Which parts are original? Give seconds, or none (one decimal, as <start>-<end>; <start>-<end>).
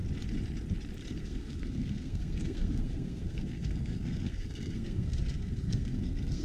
0.0-1.1